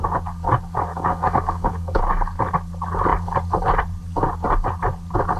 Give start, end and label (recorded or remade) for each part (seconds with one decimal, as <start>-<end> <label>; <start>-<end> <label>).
0.0-0.9 recorded; 0.9-2.0 remade; 2.0-5.4 recorded